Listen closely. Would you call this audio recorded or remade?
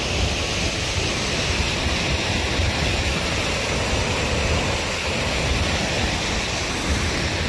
recorded